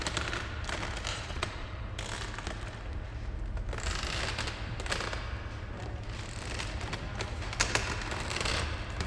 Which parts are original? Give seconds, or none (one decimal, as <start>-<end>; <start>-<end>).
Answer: 0.0-1.1; 1.8-9.1